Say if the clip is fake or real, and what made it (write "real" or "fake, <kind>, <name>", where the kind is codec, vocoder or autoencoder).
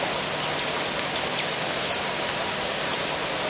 real